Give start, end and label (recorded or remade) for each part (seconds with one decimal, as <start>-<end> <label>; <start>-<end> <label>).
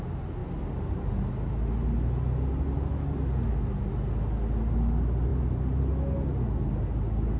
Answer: 0.0-5.3 recorded; 5.3-5.8 remade; 5.8-7.4 recorded